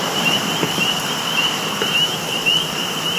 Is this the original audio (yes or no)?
no